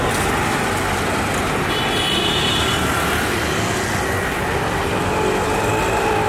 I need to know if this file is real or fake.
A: real